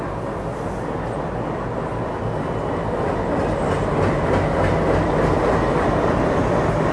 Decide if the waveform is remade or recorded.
recorded